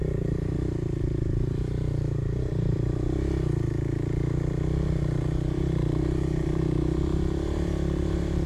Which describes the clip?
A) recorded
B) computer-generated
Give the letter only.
B